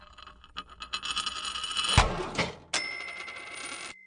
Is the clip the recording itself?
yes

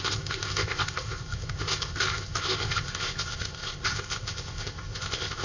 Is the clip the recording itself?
no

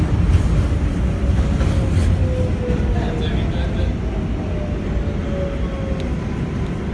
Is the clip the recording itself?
yes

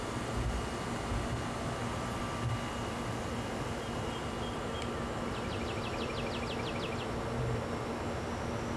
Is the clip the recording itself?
yes